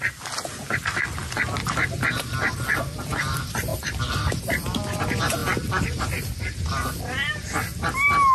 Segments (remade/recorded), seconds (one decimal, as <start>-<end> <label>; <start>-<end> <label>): 0.0-8.3 recorded